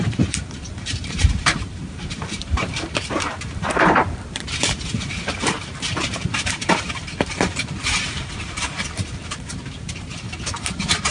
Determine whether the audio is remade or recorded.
remade